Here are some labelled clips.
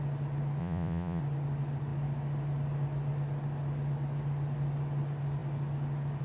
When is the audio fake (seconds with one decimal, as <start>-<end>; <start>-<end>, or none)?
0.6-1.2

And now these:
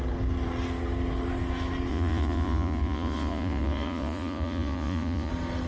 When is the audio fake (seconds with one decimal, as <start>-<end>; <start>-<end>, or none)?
1.9-5.3

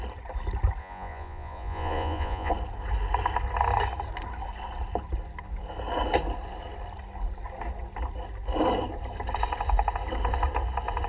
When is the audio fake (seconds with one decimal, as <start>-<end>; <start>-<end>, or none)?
0.8-2.5

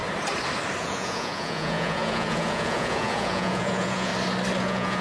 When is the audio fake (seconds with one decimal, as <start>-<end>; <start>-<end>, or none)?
0.8-4.1; 4.6-5.0

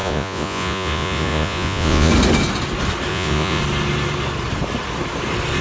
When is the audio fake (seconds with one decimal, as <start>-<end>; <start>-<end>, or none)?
0.0-2.1; 3.1-3.6

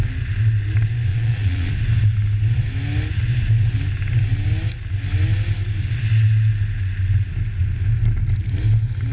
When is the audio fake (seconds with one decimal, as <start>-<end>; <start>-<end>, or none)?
1.1-1.7